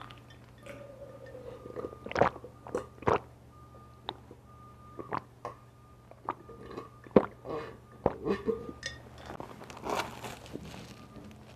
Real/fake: real